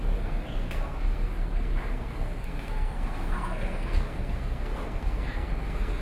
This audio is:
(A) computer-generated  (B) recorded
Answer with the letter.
A